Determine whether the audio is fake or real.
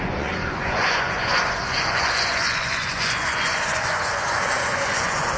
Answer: fake